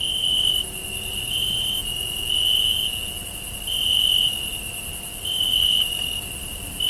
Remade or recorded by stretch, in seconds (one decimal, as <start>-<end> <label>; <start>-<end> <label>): 0.0-1.8 recorded; 1.8-3.3 remade; 3.3-6.9 recorded

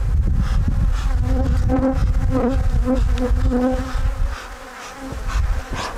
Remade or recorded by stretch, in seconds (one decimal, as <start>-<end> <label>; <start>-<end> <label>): 0.0-6.0 recorded

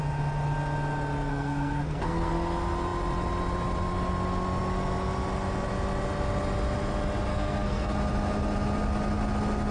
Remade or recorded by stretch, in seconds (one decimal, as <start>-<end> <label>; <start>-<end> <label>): 0.0-1.3 recorded; 1.3-2.3 remade; 2.3-7.3 recorded; 7.3-7.9 remade; 7.9-9.7 recorded

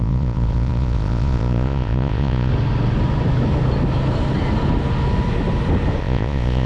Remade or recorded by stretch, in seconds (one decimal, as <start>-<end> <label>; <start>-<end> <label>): 0.0-2.5 remade; 2.5-6.0 recorded; 6.0-6.7 remade

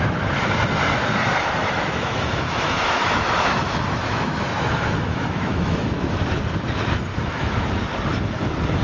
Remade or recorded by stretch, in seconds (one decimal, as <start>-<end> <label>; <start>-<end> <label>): 0.0-1.6 recorded; 1.6-6.4 remade; 6.4-7.1 recorded; 7.1-7.7 remade; 7.7-8.8 recorded

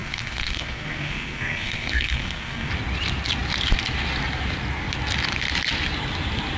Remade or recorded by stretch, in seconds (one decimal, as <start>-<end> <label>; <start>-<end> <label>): 0.0-2.7 remade; 2.7-6.6 recorded

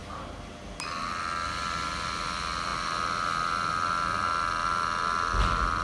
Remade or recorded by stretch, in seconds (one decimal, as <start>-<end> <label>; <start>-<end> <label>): 0.0-5.8 recorded